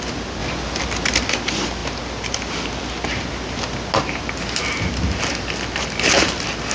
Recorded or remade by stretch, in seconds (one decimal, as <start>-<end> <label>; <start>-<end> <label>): 0.0-6.7 recorded